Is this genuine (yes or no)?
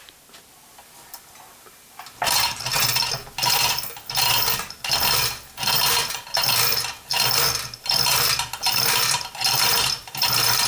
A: yes